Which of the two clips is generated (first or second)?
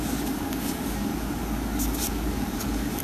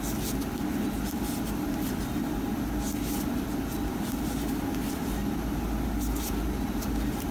first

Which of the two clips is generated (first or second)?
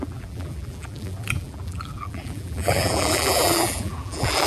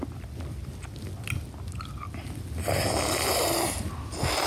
first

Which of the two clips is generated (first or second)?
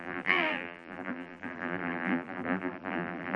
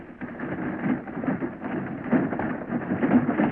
first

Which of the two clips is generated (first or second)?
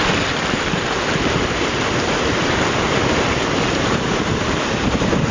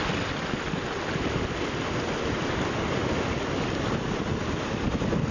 first